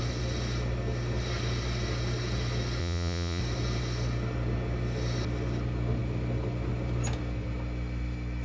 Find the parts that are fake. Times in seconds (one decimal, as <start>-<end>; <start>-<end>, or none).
2.8-3.4